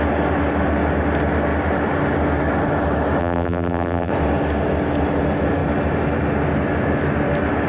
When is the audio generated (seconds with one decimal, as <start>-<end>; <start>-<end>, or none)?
3.2-4.1